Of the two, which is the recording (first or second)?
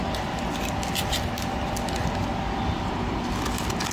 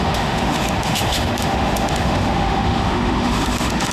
first